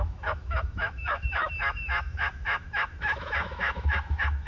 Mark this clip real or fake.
fake